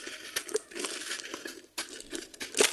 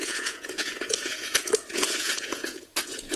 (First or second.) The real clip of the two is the first